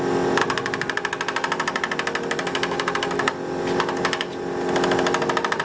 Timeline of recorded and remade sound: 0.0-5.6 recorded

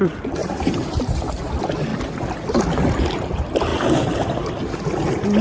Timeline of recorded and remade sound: 0.0-0.4 recorded; 0.4-1.4 remade; 1.4-5.4 recorded

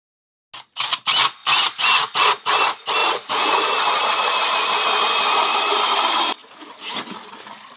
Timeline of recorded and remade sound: 0.0-3.0 recorded; 3.0-3.6 remade; 3.6-6.4 recorded; 6.4-7.0 remade; 7.0-7.8 recorded

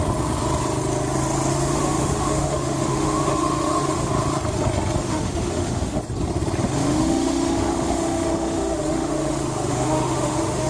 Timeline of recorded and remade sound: 0.0-1.5 recorded; 1.5-4.1 remade; 4.1-5.0 recorded; 5.0-6.0 remade; 6.0-6.8 recorded; 6.8-10.7 remade